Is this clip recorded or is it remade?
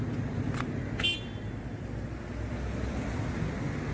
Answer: recorded